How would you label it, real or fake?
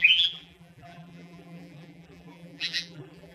fake